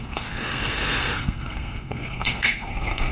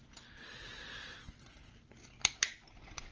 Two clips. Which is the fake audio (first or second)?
first